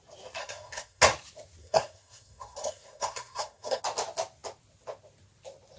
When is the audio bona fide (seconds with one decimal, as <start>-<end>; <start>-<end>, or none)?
0.0-0.4; 1.0-1.6; 3.8-5.8